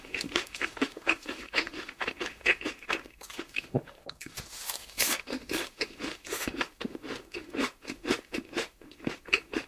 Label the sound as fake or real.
fake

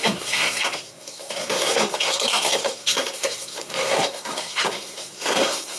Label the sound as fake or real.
fake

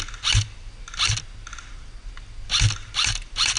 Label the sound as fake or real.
real